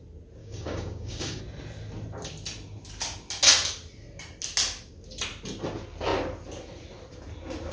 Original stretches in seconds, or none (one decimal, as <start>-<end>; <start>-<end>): 0.0-0.4; 1.4-7.7